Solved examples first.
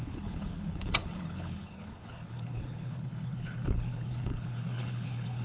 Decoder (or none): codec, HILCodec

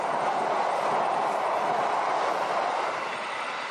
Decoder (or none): none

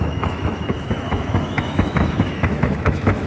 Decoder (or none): autoencoder, DAC-VAE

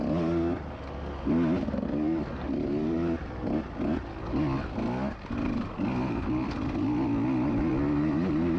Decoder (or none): none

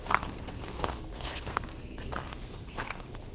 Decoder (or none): codec, SNAC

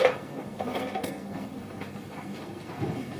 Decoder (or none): codec, SNAC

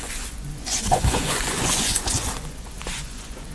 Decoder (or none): vocoder, Vocos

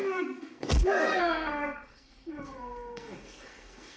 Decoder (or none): codec, SNAC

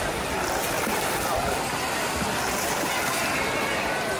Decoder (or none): none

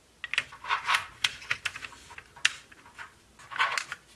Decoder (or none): none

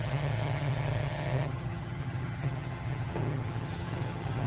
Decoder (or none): vocoder, HiFi-GAN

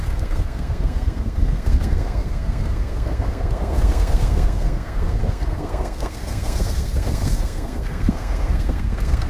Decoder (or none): codec, SNAC